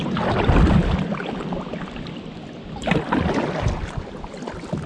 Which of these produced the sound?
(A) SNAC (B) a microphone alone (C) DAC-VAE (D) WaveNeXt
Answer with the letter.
B